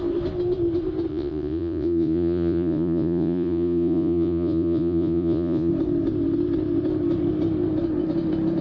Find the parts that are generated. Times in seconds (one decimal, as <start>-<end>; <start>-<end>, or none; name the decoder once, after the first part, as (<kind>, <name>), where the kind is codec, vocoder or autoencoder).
1.1-5.7 (vocoder, Vocos)